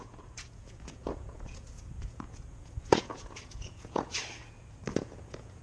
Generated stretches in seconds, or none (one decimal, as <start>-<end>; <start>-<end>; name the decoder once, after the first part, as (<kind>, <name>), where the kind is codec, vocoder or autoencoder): 0.0-4.2 (vocoder, Vocos); 4.9-5.6